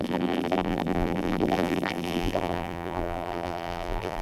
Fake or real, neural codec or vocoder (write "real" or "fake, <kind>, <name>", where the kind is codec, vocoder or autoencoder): fake, vocoder, BigVGAN v2